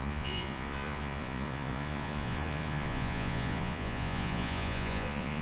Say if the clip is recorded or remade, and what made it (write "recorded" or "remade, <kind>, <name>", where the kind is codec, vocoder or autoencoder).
remade, vocoder, Vocos